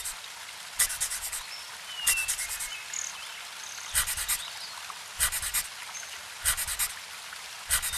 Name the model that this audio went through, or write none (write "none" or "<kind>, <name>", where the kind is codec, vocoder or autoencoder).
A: none